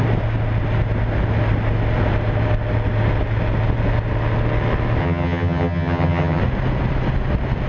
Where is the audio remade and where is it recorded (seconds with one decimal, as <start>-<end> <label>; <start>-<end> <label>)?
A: 0.0-5.0 recorded; 5.0-6.4 remade; 6.4-7.7 recorded